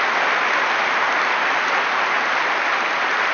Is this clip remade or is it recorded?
recorded